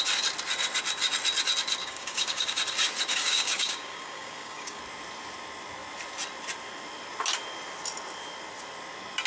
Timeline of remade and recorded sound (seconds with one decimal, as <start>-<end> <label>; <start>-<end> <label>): 0.0-1.8 recorded; 1.8-2.6 remade; 2.6-3.1 recorded; 3.1-4.8 remade; 4.8-9.3 recorded